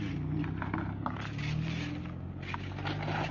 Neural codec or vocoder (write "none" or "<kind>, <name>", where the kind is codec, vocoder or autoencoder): none